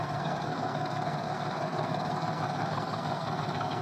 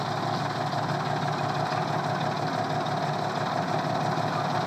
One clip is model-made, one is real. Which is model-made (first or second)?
first